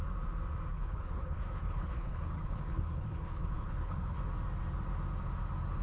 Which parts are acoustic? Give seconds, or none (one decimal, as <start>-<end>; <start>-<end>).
0.0-0.7; 4.2-5.8